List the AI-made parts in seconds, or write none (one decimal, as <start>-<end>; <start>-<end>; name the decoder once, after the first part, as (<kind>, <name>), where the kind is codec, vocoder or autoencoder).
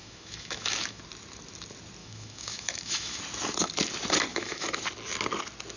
0.0-1.0 (autoencoder, DAC-VAE); 2.0-3.2; 4.3-4.8